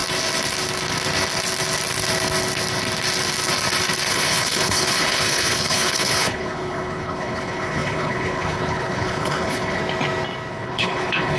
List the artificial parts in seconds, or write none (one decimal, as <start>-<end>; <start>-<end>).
4.1-9.8; 10.5-11.4